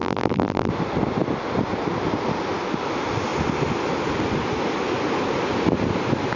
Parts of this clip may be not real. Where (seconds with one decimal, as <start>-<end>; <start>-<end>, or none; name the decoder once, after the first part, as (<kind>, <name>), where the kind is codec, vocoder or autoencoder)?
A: 0.0-0.7 (vocoder, BigVGAN v2)